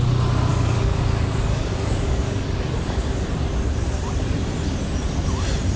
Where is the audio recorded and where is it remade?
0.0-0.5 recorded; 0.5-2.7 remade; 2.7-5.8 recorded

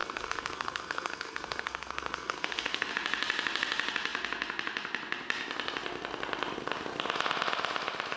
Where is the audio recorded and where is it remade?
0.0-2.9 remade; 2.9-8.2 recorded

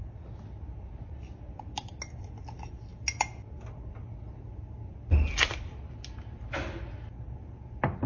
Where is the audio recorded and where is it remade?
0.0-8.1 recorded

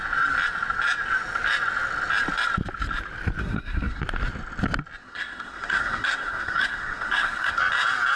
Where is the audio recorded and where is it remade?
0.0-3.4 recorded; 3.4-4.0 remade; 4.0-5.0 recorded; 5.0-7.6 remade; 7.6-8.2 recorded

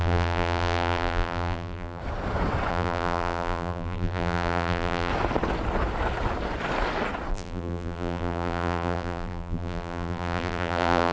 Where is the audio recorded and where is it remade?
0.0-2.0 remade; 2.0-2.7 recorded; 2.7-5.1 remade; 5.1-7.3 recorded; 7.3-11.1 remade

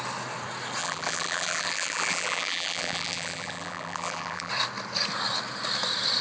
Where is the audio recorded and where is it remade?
0.0-0.8 recorded; 0.8-4.5 remade; 4.5-6.2 recorded

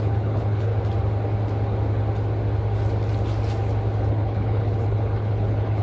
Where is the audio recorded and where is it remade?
0.0-0.7 remade; 0.7-4.1 recorded; 4.1-5.8 remade

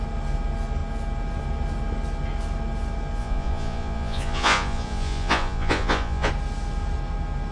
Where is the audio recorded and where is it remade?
0.0-3.2 recorded; 3.2-6.3 remade; 6.3-7.5 recorded